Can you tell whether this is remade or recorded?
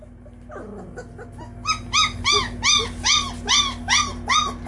recorded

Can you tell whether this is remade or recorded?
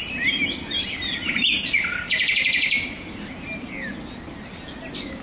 recorded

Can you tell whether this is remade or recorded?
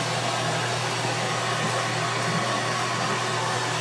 recorded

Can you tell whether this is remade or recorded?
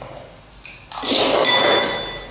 recorded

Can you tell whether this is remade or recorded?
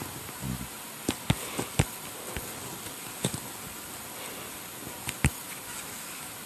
recorded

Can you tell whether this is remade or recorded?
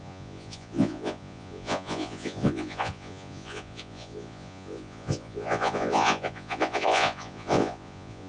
remade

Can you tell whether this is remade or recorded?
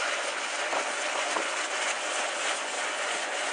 remade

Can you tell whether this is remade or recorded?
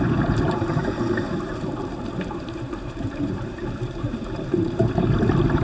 remade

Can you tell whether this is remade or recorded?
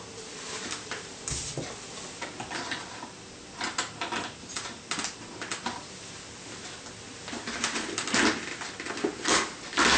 recorded